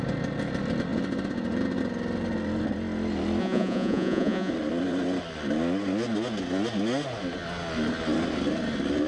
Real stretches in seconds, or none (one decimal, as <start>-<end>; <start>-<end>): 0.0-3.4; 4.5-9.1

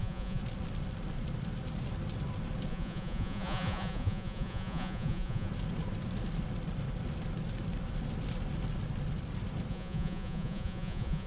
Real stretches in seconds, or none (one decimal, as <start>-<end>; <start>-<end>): 0.4-2.7; 5.5-9.7

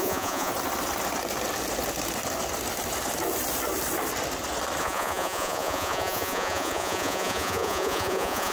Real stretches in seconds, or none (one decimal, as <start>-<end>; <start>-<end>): 0.5-4.8

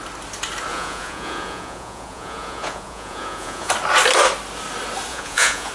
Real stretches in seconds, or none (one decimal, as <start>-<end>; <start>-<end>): 0.0-0.7; 3.7-5.1

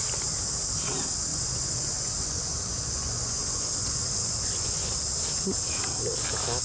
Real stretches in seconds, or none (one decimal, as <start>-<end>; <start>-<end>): 0.0-1.3; 4.9-6.6

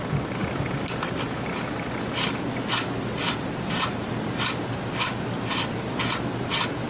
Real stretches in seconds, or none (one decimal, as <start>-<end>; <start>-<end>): 0.0-6.9